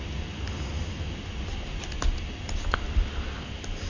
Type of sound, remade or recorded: recorded